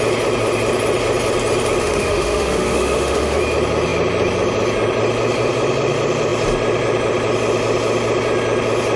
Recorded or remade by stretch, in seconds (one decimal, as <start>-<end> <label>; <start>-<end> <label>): 0.0-1.8 recorded; 1.8-3.4 remade; 3.4-9.0 recorded